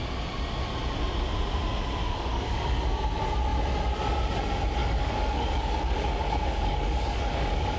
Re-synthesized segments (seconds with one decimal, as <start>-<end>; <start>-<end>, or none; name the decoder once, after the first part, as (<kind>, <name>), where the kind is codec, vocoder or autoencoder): 2.0-2.8 (codec, DAC); 4.8-7.8